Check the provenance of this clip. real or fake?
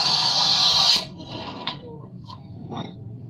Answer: fake